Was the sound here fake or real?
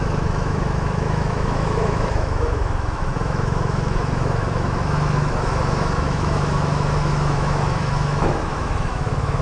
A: fake